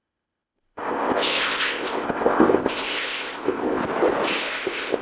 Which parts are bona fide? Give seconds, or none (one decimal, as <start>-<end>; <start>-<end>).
3.8-4.4